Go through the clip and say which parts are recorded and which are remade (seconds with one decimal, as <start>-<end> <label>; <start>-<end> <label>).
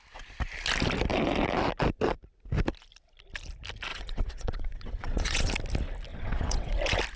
0.0-3.9 recorded; 3.9-5.5 remade; 5.5-6.1 recorded; 6.1-6.7 remade; 6.7-7.2 recorded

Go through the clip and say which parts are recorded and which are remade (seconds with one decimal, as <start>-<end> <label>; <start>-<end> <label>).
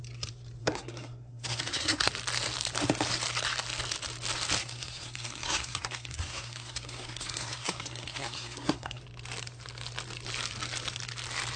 0.0-0.6 recorded; 0.6-2.1 remade; 2.1-4.6 recorded; 4.6-9.0 remade; 9.0-11.6 recorded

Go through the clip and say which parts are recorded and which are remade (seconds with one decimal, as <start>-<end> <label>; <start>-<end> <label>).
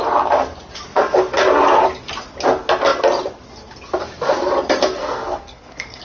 0.0-5.0 recorded; 5.0-6.0 remade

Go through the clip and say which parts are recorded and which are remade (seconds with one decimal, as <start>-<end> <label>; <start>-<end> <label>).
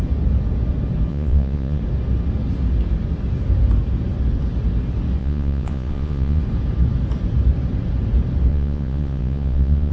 0.0-1.1 recorded; 1.1-1.8 remade; 1.8-5.2 recorded; 5.2-6.4 remade; 6.4-8.5 recorded; 8.5-9.9 remade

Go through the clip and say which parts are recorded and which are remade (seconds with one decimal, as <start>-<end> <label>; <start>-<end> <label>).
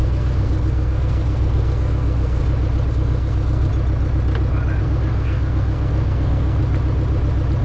0.0-2.4 remade; 2.4-2.9 recorded; 2.9-3.7 remade; 3.7-4.8 recorded; 4.8-6.6 remade; 6.6-7.6 recorded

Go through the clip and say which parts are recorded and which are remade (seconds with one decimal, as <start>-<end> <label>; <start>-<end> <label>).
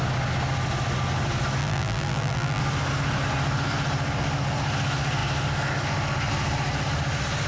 0.0-1.6 recorded; 1.6-2.6 remade; 2.6-7.5 recorded